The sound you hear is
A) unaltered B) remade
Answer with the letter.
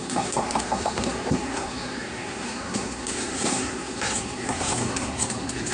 B